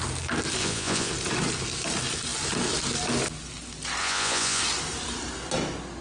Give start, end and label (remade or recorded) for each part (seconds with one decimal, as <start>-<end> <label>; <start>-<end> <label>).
0.0-0.6 recorded; 0.6-1.1 remade; 1.1-4.0 recorded; 4.0-4.6 remade; 4.6-6.0 recorded